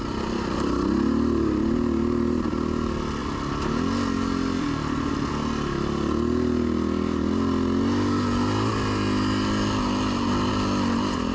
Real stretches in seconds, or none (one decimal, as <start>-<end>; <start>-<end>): 0.0-11.3